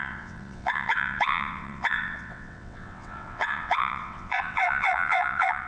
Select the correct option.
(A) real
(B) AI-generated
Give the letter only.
B